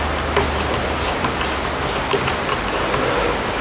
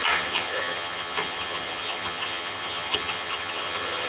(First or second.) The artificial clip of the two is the second